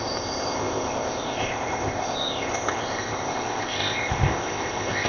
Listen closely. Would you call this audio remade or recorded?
remade